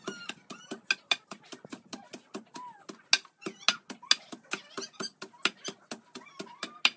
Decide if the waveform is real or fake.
real